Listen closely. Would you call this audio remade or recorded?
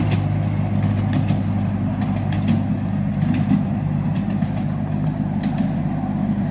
recorded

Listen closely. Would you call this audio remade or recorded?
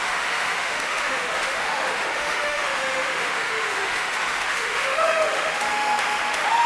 remade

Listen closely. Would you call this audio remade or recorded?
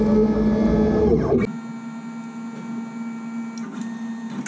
recorded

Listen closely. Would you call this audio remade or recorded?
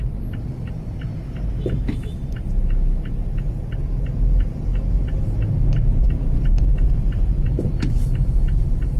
recorded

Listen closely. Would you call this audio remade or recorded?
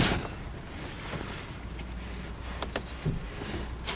recorded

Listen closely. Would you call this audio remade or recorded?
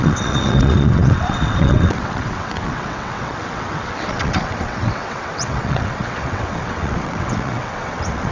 remade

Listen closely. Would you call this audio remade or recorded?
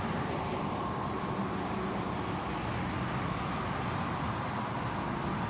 recorded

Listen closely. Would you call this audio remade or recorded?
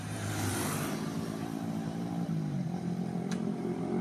remade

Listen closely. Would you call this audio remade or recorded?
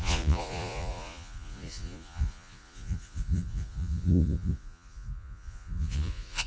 remade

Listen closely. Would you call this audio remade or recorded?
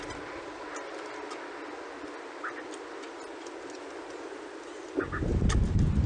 recorded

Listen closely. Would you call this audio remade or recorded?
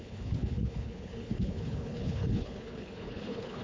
remade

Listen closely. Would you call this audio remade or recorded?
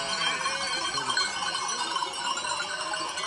recorded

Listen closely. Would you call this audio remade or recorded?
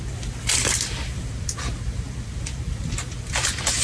remade